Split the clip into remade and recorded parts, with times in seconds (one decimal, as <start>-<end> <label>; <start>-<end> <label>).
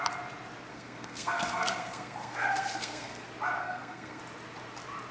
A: 0.0-0.7 recorded; 0.7-3.2 remade; 3.2-3.6 recorded; 3.6-4.2 remade; 4.2-5.1 recorded